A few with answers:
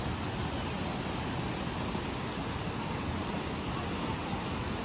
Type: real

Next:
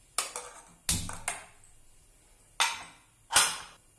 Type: real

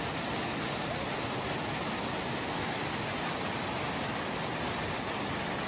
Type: real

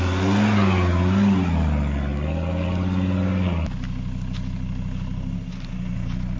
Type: real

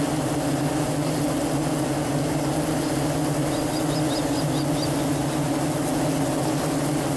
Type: real